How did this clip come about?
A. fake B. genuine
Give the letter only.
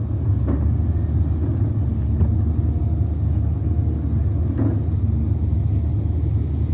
B